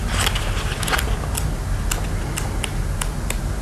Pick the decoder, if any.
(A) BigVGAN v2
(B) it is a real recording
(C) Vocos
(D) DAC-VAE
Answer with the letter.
B